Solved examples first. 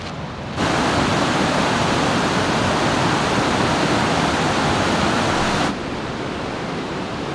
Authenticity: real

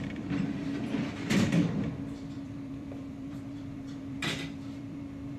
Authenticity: fake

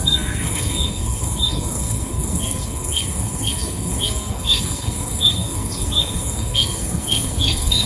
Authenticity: fake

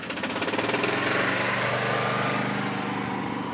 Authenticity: real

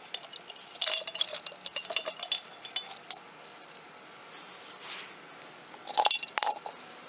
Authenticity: real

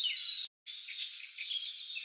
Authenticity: real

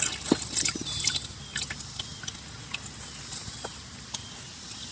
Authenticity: real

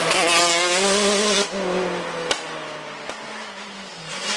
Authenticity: real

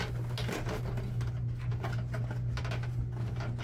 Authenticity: real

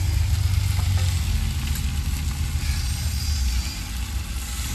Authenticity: real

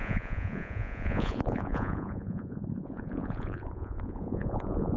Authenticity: fake